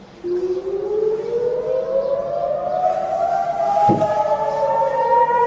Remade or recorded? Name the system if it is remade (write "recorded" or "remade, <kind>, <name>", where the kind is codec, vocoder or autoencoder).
recorded